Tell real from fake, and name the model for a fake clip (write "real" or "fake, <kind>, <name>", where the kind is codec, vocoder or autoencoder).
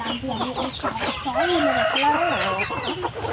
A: real